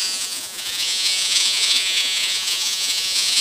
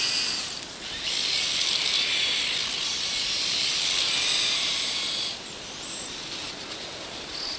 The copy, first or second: first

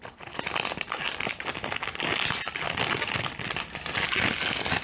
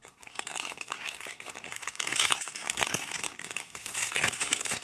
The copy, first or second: second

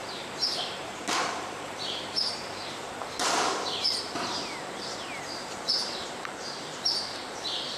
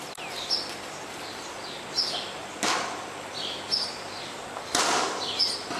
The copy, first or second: first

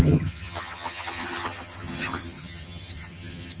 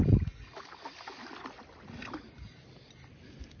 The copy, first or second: first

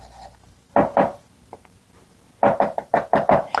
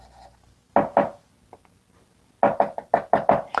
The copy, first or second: first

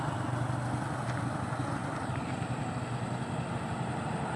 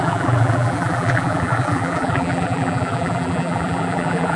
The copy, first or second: second